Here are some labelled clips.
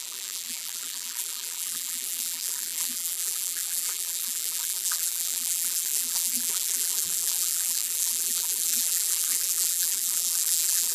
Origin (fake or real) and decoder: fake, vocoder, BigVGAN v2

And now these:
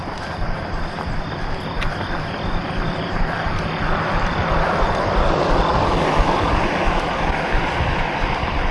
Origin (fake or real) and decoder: real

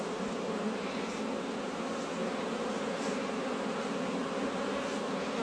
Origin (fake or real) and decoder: real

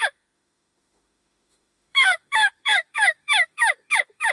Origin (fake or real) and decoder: fake, autoencoder, DAC-VAE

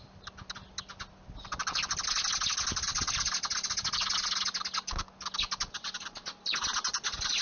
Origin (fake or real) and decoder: real